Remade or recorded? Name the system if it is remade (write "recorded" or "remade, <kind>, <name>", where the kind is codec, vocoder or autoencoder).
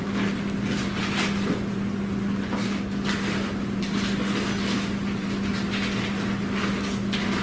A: recorded